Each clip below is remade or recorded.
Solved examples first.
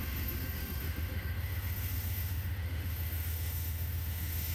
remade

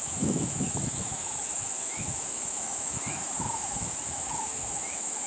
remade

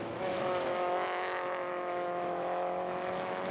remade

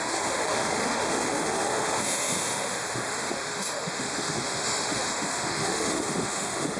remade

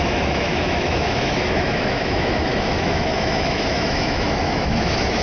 remade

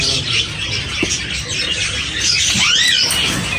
recorded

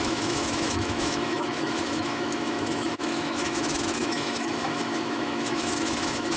remade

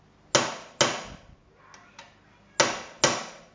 recorded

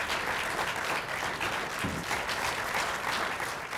recorded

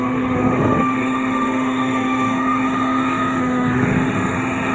remade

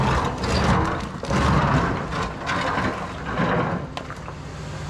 recorded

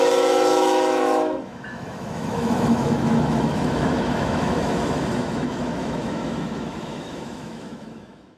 remade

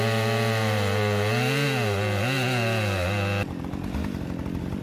recorded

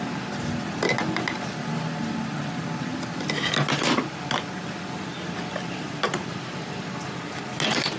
recorded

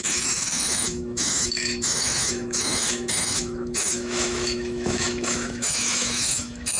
remade